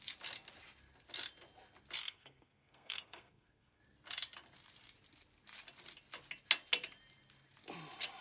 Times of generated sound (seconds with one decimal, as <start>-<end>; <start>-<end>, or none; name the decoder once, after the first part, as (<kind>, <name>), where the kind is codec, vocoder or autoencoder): 2.0-3.8 (codec, SNAC)